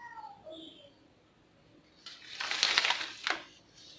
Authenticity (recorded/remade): recorded